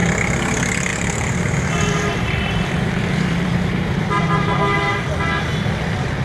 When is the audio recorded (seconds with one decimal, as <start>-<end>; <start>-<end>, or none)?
0.0-0.9; 4.6-6.2

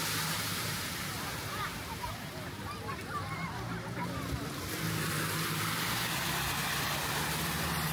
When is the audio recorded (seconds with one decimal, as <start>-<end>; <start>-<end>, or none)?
0.0-0.5; 4.7-7.9